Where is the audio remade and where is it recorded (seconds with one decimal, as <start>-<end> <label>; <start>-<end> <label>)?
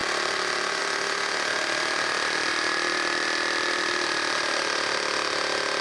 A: 0.0-0.8 remade; 0.8-1.5 recorded; 1.5-5.0 remade; 5.0-5.8 recorded